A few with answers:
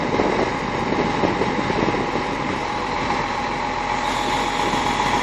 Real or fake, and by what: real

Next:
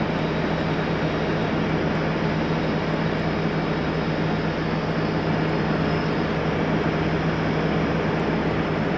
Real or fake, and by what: real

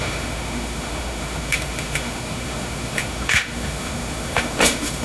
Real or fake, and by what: fake, autoencoder, DAC-VAE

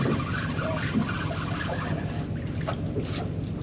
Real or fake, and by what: real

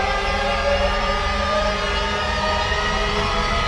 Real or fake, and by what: fake, vocoder, BigVGAN v2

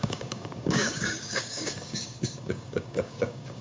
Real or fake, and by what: fake, codec, DAC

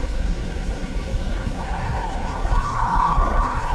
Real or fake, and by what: fake, codec, SNAC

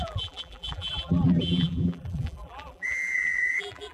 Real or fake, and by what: fake, vocoder, BigVGAN v2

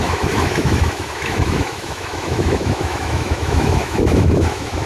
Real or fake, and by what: fake, autoencoder, DAC-VAE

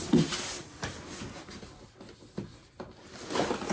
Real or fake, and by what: real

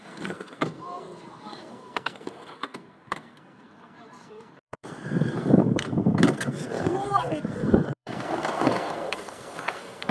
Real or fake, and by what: fake, codec, SNAC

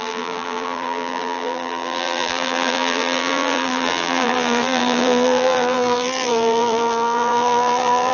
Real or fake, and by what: fake, vocoder, BigVGAN v2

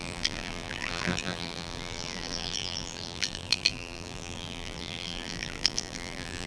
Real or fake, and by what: fake, vocoder, BigVGAN v2